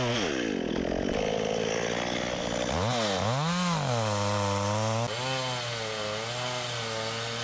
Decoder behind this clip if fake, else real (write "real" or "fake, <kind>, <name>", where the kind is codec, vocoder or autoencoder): real